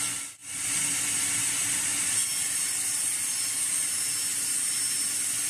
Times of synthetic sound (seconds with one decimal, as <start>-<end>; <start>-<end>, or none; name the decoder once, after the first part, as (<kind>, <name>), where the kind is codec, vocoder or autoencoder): none

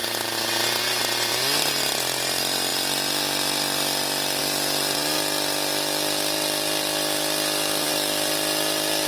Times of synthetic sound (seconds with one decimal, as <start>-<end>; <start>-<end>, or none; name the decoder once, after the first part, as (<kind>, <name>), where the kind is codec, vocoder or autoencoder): none

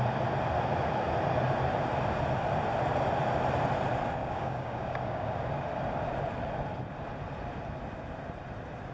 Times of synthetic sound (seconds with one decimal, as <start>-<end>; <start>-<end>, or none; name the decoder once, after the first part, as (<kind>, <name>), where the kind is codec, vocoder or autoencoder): 4.2-5.5 (codec, DAC)